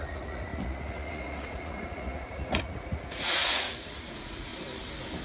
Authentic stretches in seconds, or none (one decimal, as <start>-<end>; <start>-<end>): 4.5-5.2